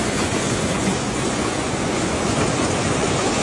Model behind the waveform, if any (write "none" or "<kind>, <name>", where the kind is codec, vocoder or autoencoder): vocoder, Vocos